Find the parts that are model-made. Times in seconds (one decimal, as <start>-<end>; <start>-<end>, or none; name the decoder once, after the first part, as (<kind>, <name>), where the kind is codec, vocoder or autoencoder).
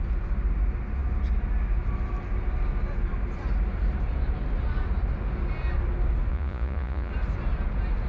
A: 6.3-7.1 (vocoder, Vocos)